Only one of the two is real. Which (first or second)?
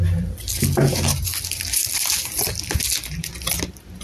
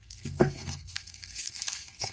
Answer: first